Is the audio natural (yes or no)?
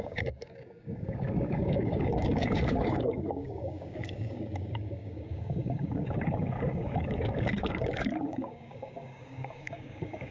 no